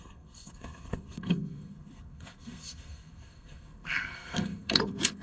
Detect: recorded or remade remade